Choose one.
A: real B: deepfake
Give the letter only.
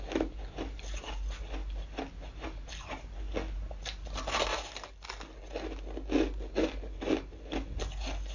A